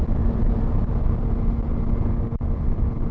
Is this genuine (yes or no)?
yes